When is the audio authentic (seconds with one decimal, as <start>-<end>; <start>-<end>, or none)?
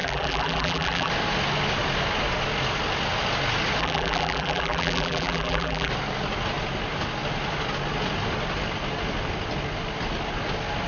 1.1-3.8; 5.9-10.9